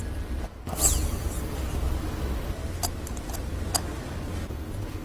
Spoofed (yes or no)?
no